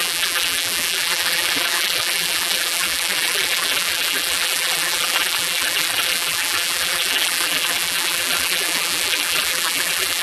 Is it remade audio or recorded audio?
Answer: remade